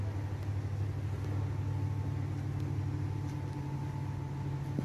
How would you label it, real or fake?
real